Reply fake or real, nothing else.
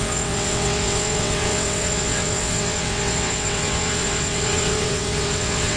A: fake